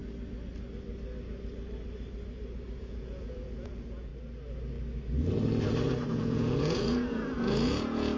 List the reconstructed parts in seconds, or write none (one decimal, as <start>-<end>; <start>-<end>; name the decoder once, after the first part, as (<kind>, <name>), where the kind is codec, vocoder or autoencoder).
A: 2.8-4.1 (vocoder, Vocos); 6.1-8.2